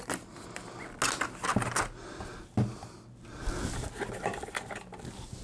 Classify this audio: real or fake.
real